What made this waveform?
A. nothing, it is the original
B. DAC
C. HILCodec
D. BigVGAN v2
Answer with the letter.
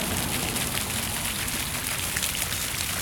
A